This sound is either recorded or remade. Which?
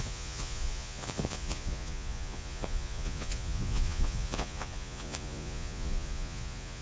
remade